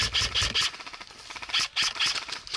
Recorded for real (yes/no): yes